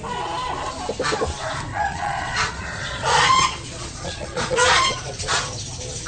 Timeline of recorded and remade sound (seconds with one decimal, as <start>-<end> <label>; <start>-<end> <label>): 0.0-1.7 recorded; 1.7-5.4 remade; 5.4-6.1 recorded